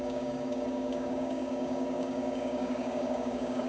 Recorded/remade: remade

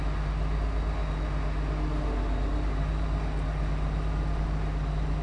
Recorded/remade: recorded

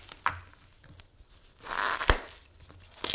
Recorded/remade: recorded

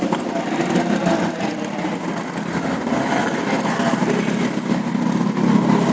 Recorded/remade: recorded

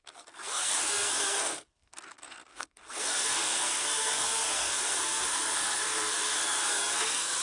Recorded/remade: remade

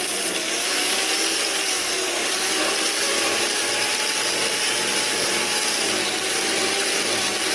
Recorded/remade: remade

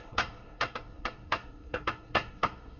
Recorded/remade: remade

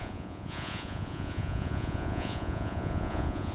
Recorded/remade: remade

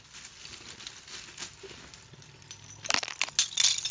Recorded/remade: recorded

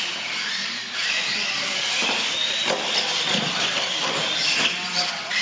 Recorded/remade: recorded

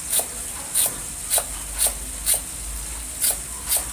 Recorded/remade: recorded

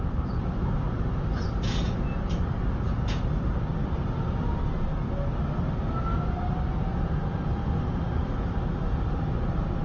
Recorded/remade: recorded